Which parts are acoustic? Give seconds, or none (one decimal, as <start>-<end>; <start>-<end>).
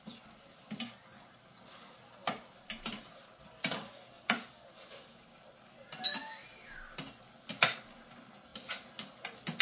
0.0-9.6